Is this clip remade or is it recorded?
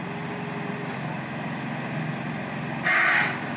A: recorded